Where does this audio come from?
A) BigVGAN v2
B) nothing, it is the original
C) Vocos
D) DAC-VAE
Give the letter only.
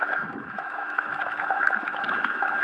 D